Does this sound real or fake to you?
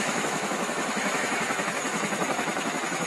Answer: fake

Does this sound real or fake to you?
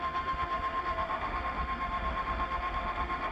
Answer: fake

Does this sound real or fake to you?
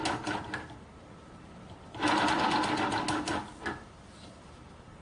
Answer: real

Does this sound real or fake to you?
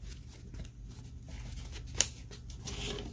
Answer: real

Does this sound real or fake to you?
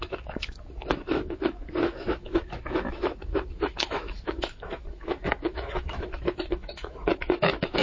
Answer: fake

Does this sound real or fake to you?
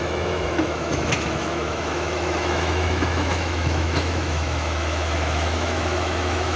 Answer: fake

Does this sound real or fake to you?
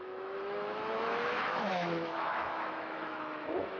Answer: fake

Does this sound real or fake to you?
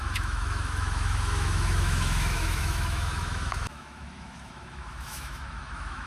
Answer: fake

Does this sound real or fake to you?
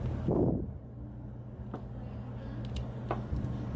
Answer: real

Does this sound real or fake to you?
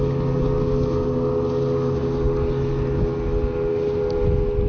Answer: real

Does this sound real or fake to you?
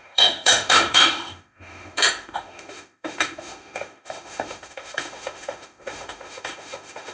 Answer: fake